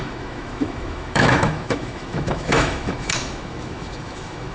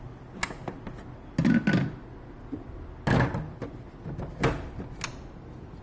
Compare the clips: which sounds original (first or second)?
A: second